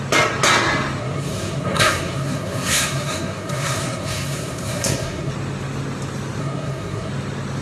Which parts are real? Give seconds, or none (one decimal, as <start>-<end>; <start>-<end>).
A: 0.0-1.0; 5.3-6.4; 7.1-7.6